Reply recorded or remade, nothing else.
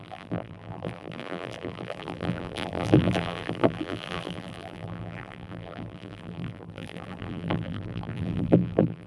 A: remade